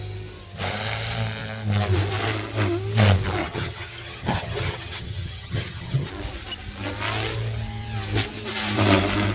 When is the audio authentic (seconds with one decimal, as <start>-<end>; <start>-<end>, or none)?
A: 0.0-3.4; 6.1-9.3